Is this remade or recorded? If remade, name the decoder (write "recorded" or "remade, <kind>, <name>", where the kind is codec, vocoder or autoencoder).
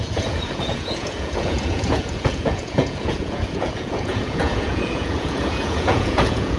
remade, vocoder, Vocos